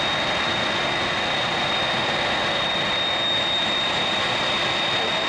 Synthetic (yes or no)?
no